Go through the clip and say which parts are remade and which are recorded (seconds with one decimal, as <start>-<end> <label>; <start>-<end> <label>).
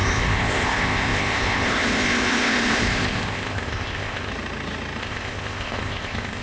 0.0-4.3 remade; 4.3-5.0 recorded; 5.0-6.4 remade